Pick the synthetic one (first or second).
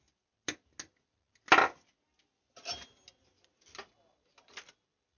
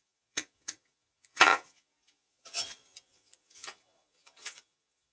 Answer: second